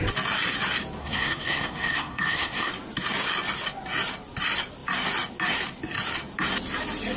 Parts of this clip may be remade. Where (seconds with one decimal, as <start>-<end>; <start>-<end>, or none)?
1.0-2.7